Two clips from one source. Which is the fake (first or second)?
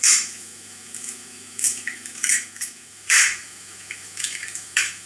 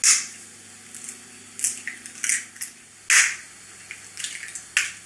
first